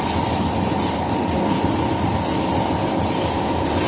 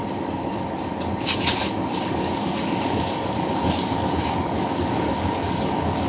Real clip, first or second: first